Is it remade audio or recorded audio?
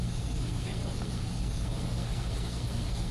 remade